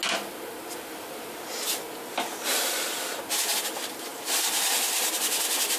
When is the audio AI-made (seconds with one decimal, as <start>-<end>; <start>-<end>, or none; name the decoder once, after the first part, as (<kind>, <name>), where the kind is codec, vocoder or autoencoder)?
none